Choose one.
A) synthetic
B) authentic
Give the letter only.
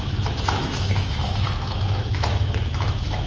A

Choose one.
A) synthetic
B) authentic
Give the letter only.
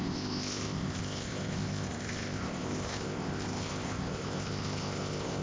A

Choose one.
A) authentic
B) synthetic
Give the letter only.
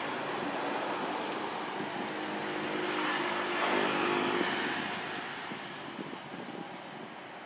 A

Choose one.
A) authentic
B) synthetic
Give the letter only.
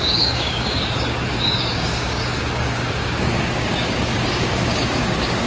B